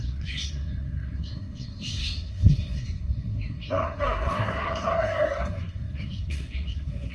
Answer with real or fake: fake